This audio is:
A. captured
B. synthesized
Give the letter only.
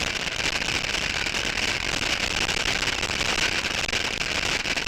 A